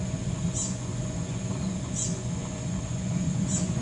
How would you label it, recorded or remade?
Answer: remade